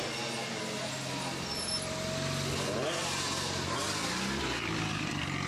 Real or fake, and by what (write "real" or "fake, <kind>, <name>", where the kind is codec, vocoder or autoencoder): real